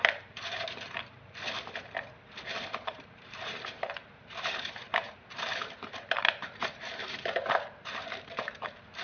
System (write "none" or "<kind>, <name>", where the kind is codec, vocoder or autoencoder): vocoder, BigVGAN v2